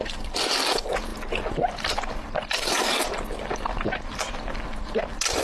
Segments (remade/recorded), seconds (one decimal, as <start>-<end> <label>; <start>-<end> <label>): 0.0-5.4 recorded